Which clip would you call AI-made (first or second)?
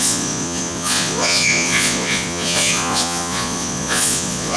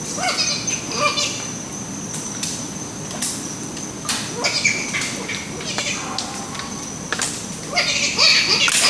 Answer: first